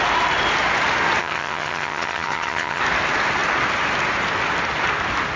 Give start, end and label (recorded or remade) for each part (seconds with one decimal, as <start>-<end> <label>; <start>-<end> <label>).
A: 0.0-1.2 recorded; 1.2-2.8 remade; 2.8-5.4 recorded

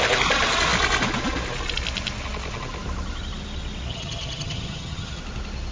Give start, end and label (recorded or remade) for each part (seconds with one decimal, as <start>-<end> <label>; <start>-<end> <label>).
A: 0.0-3.9 recorded; 3.9-5.2 remade; 5.2-5.7 recorded

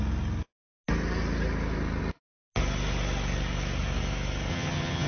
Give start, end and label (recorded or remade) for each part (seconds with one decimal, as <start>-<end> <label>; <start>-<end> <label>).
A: 0.0-4.5 recorded; 4.5-5.1 remade

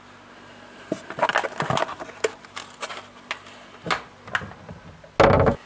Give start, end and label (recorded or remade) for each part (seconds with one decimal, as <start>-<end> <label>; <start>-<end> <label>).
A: 0.0-5.7 recorded